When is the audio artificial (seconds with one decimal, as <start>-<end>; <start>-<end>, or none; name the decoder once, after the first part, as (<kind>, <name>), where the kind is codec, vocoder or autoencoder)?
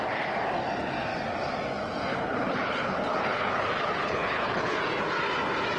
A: 2.1-4.8 (codec, HILCodec)